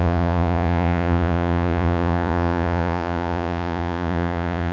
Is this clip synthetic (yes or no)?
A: yes